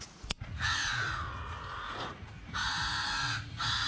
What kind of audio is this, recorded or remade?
remade